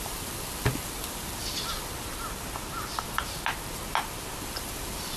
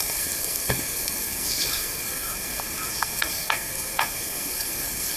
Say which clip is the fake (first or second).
second